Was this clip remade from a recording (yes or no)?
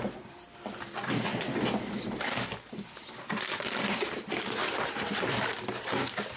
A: yes